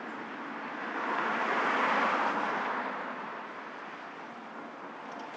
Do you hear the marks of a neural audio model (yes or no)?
no